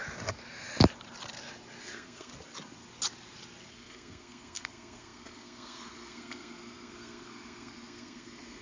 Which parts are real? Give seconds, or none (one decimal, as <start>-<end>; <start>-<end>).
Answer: 0.0-1.8; 2.3-3.7